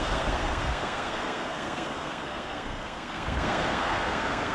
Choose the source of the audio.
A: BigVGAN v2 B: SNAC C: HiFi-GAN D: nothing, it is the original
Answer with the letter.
B